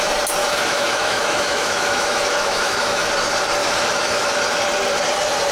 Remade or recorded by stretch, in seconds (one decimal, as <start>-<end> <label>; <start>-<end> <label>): 0.0-0.4 recorded; 0.4-3.1 remade; 3.1-3.6 recorded; 3.6-4.3 remade; 4.3-5.5 recorded